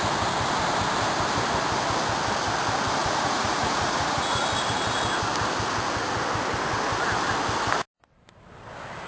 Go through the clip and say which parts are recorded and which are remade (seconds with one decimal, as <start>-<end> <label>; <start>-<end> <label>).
0.0-3.0 recorded; 3.0-4.4 remade; 4.4-9.1 recorded